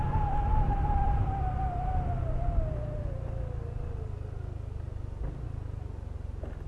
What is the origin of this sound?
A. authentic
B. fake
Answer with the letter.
A